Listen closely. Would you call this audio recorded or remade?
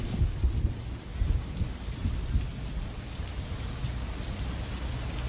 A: recorded